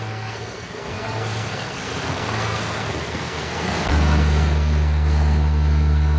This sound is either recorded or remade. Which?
remade